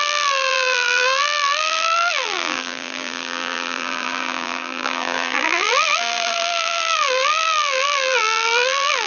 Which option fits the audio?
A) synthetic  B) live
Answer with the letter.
A